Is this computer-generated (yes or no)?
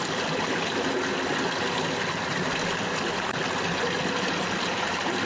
no